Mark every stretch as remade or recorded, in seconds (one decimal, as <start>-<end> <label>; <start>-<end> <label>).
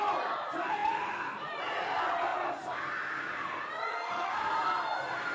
0.0-3.9 recorded; 3.9-4.5 remade; 4.5-5.3 recorded